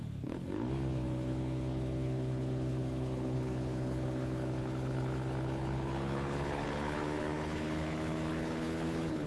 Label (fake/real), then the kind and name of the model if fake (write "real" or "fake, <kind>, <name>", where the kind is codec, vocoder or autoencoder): fake, codec, HILCodec